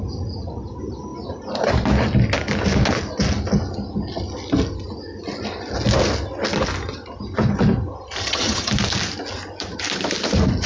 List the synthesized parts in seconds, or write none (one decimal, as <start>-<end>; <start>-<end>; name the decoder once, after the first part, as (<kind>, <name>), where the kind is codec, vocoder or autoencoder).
8.2-8.7 (vocoder, HiFi-GAN)